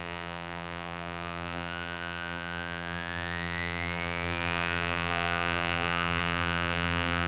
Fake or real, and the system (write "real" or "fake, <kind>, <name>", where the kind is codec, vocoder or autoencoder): fake, vocoder, BigVGAN v2